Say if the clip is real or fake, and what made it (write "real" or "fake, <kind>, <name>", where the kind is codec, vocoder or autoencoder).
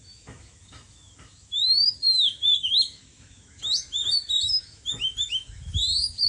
fake, autoencoder, DAC-VAE